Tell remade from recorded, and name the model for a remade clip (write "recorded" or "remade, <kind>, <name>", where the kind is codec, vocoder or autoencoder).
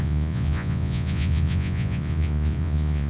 remade, vocoder, Vocos